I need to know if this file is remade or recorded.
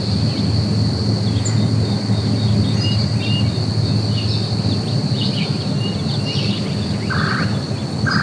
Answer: recorded